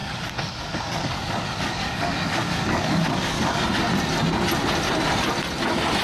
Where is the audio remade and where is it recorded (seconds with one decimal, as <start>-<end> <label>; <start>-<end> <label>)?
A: 0.0-3.6 remade; 3.6-6.0 recorded